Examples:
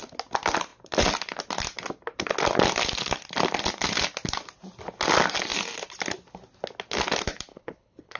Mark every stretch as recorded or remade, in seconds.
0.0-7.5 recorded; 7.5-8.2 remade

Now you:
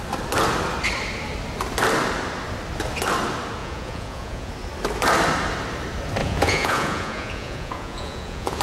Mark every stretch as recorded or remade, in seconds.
0.0-3.6 recorded; 3.6-4.5 remade; 4.5-6.2 recorded; 6.2-8.6 remade

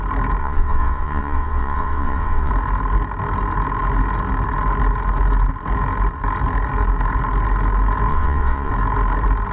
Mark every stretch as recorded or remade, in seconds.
0.0-0.4 recorded; 0.4-2.5 remade; 2.5-8.1 recorded; 8.1-8.7 remade; 8.7-9.5 recorded